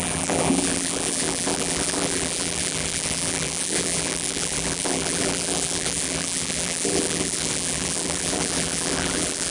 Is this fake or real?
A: fake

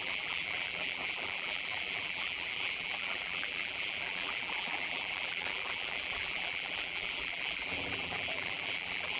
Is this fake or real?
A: fake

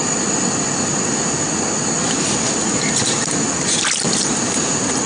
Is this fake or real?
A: real